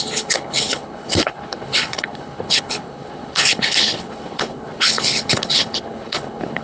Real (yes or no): no